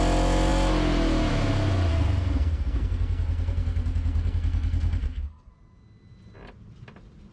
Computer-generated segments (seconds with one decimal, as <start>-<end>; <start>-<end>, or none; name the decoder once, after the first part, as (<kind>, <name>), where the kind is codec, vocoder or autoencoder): 1.9-5.5 (codec, SNAC)